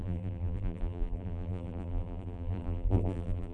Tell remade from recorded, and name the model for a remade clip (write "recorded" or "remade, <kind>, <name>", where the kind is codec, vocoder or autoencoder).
remade, vocoder, BigVGAN v2